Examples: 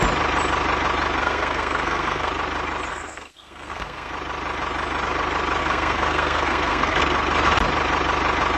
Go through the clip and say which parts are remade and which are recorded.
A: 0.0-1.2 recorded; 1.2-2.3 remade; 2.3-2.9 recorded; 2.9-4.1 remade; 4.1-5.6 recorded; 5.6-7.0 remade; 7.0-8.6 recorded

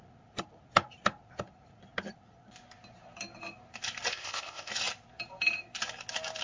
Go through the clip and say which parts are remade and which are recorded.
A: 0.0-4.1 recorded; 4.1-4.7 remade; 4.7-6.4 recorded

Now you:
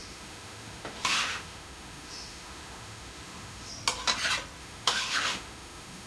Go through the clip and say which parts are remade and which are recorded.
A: 0.0-3.7 remade; 3.7-4.6 recorded; 4.6-6.1 remade